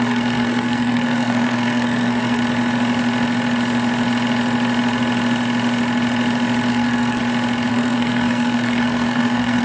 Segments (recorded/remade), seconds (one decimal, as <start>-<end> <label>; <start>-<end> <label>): 0.0-2.4 remade; 2.4-6.7 recorded; 6.7-7.2 remade; 7.2-7.7 recorded; 7.7-9.6 remade